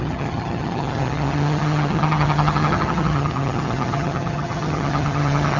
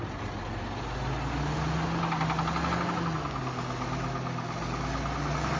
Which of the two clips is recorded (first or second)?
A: second